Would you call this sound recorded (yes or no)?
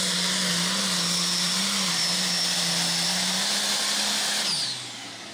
yes